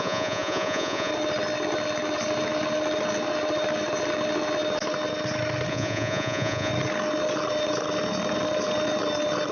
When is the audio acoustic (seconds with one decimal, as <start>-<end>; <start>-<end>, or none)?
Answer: 1.1-5.7; 6.7-9.5